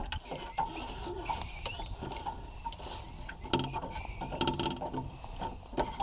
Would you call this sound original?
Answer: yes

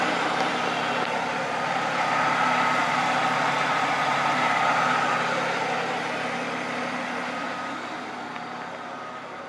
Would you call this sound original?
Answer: yes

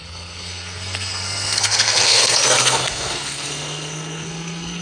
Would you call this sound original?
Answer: no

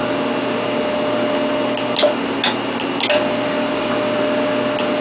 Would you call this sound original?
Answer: yes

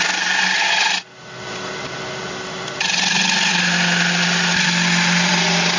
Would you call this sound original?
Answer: yes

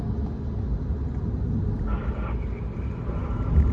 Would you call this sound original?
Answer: yes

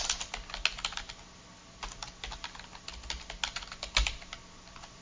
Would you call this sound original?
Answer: yes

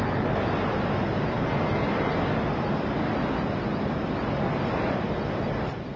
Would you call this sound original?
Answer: yes